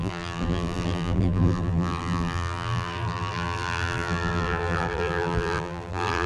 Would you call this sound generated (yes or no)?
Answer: yes